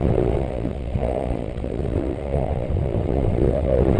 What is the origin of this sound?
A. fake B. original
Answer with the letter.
A